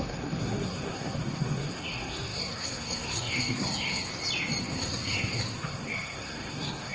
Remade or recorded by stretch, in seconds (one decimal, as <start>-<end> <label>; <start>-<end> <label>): 0.0-4.1 remade; 4.1-4.6 recorded; 4.6-6.9 remade